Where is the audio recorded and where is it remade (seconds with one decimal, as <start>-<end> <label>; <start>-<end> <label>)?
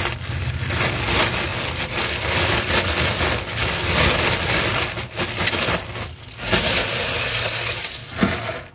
0.0-8.7 recorded